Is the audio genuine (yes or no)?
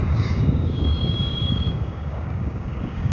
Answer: no